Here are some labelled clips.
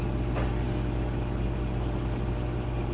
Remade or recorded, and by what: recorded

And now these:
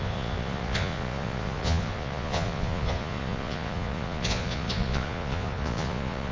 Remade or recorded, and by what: remade, vocoder, Vocos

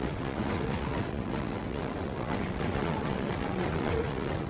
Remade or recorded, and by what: remade, vocoder, WaveNeXt